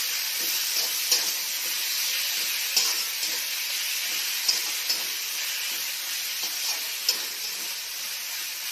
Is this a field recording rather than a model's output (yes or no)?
yes